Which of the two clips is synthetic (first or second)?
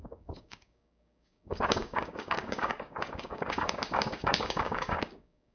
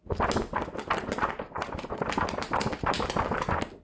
first